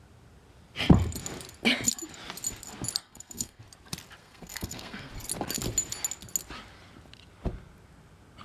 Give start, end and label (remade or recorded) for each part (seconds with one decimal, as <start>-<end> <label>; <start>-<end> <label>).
0.0-3.0 recorded; 3.0-3.6 remade; 3.6-4.2 recorded; 4.2-5.1 remade; 5.1-8.4 recorded